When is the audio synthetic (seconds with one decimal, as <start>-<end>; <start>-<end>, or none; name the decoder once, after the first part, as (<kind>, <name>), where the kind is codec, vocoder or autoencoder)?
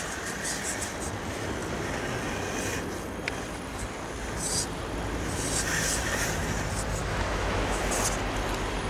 7.0-7.8 (autoencoder, DAC-VAE)